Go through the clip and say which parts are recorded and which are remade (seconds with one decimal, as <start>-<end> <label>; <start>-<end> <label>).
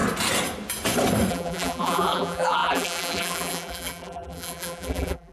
0.0-1.3 recorded; 1.3-5.3 remade